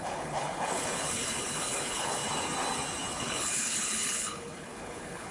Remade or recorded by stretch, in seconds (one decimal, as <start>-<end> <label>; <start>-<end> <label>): 0.0-2.2 remade; 2.2-3.1 recorded; 3.1-5.3 remade